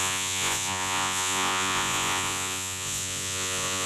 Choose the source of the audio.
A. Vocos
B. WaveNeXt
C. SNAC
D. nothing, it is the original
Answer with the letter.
A